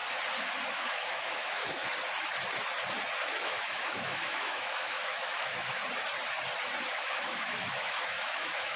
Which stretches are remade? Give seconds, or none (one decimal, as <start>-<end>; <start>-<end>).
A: 0.7-1.8; 3.3-5.8; 6.9-8.8